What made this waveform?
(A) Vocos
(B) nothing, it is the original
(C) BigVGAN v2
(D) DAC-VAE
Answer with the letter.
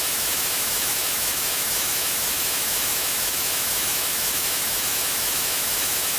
D